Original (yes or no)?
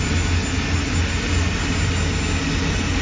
yes